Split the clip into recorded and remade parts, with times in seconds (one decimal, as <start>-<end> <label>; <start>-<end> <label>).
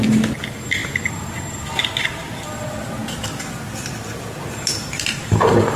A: 0.0-5.8 recorded